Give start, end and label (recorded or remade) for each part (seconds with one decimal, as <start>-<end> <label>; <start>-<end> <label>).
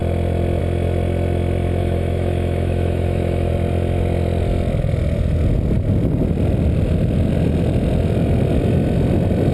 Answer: 0.0-1.8 recorded; 1.8-3.5 remade; 3.5-9.5 recorded